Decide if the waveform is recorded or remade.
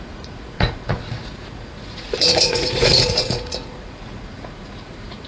remade